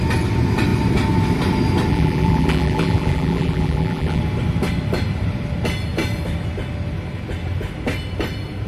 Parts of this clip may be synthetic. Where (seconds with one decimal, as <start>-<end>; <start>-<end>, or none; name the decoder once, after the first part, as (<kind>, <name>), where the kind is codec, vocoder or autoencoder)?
1.9-4.2 (vocoder, BigVGAN v2)